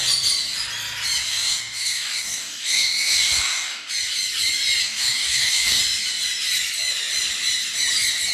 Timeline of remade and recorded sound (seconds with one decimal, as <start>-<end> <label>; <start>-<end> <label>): 0.0-1.3 recorded; 1.3-3.9 remade; 3.9-4.8 recorded; 4.8-5.8 remade; 5.8-8.3 recorded